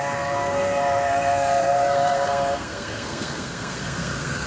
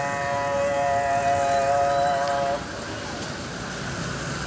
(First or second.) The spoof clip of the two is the first